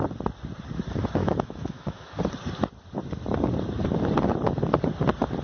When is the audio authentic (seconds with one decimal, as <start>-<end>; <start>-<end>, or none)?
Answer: 0.0-1.2; 2.2-5.4